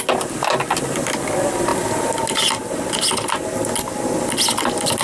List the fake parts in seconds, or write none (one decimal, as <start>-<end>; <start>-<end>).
none